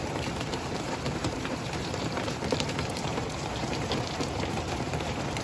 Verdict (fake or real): fake